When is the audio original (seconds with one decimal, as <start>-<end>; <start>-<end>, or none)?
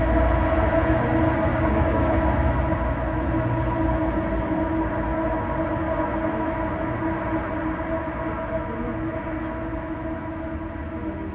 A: 0.0-1.5; 2.1-11.3